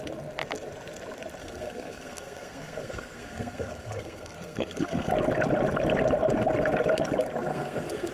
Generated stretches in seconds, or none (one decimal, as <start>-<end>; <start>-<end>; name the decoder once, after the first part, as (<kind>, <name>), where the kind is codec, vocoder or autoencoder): 1.4-5.1 (codec, SNAC); 7.5-8.1